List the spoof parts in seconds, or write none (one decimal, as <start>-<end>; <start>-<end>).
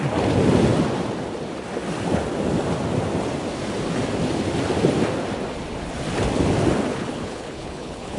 6.9-8.2